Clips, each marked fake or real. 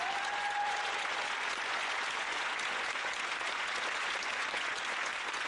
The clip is fake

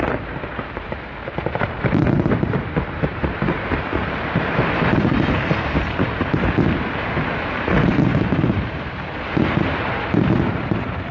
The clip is fake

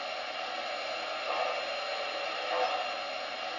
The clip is real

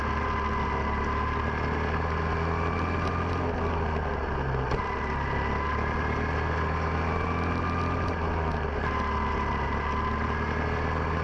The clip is real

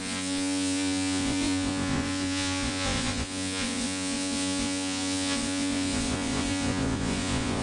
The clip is fake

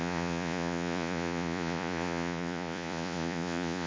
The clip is fake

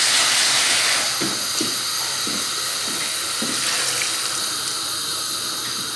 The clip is real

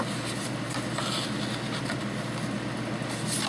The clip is real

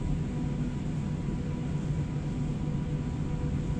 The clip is real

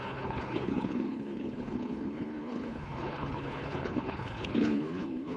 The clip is fake